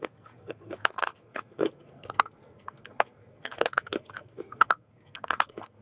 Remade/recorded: remade